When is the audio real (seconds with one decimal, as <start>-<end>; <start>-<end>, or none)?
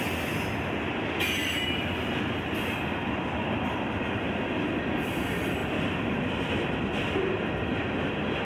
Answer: 0.0-5.6; 6.5-8.4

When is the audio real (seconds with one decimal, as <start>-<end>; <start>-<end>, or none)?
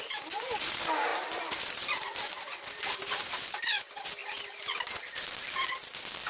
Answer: 0.0-1.1; 2.7-6.3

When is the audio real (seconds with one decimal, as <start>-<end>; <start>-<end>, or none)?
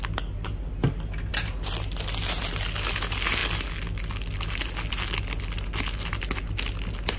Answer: 0.0-7.2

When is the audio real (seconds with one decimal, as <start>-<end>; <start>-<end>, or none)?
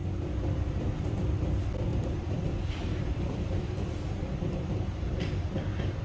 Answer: 0.0-1.9; 5.5-6.0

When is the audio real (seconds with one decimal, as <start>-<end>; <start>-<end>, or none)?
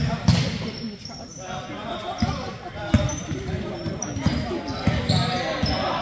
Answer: 0.0-3.1; 3.9-6.0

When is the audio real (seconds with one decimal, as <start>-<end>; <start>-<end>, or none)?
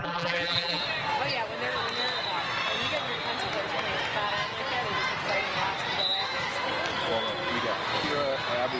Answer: 0.8-8.8